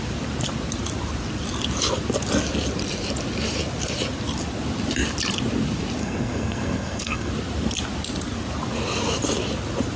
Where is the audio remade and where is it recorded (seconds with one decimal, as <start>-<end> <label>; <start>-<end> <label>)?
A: 0.0-6.0 recorded; 6.0-7.3 remade; 7.3-10.0 recorded